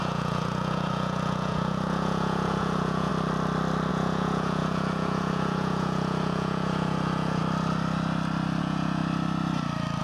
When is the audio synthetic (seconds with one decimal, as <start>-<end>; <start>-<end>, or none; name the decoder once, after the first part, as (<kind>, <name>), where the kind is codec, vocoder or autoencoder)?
0.0-3.1 (vocoder, Vocos); 3.9-7.4; 8.6-9.0